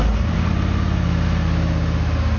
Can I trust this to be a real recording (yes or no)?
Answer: yes